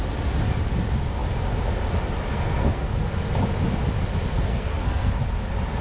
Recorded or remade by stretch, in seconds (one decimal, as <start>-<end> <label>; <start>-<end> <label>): 0.0-2.3 recorded; 2.3-3.1 remade; 3.1-4.5 recorded; 4.5-5.1 remade; 5.1-5.8 recorded